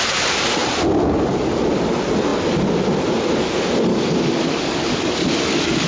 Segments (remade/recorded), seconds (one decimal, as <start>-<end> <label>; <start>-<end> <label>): 0.0-3.9 recorded; 3.9-5.9 remade